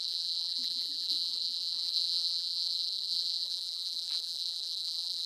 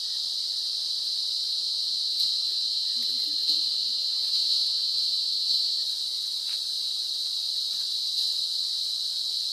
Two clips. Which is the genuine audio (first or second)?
second